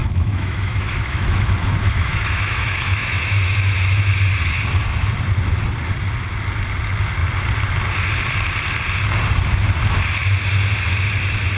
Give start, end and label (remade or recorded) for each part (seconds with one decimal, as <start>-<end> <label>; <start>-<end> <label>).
0.0-4.1 remade; 4.1-11.6 recorded